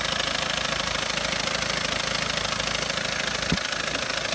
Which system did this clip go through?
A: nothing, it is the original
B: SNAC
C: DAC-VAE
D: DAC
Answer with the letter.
A